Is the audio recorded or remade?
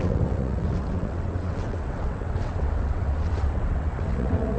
remade